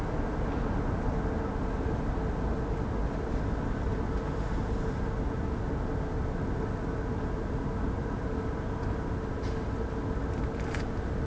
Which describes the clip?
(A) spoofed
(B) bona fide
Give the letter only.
B